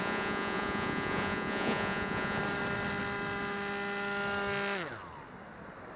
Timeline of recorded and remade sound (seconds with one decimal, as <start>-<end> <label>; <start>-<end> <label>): 0.0-2.4 remade; 2.4-6.0 recorded